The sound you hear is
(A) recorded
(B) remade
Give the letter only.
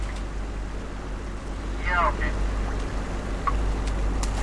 A